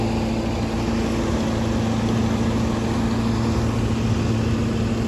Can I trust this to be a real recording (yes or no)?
yes